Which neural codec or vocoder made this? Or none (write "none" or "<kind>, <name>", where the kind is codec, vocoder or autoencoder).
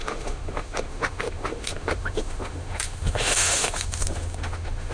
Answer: autoencoder, DAC-VAE